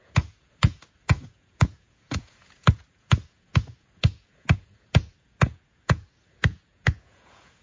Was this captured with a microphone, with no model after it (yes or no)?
no